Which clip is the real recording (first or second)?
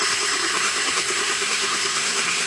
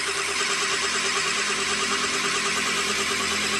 second